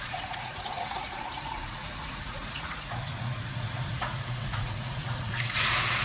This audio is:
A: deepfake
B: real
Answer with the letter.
A